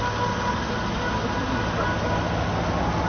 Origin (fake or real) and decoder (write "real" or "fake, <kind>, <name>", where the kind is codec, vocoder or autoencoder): real